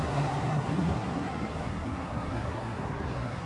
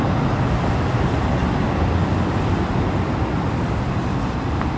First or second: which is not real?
first